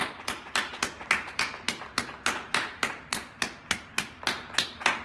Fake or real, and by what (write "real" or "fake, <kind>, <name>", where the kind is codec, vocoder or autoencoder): fake, vocoder, BigVGAN v2